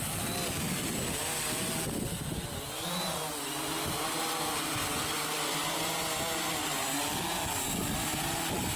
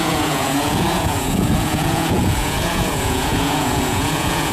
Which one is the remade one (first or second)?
second